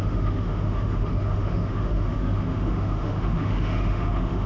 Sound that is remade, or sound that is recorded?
remade